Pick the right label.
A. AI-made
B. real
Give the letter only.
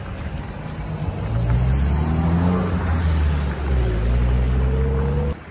B